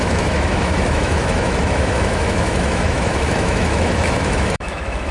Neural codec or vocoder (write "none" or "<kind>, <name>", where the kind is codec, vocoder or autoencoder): autoencoder, DAC-VAE